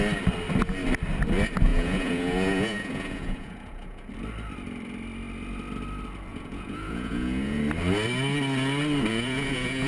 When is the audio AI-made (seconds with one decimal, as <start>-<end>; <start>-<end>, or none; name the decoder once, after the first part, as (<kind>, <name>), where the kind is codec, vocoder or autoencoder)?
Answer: 1.7-4.1 (vocoder, Vocos); 6.3-7.6; 9.1-9.9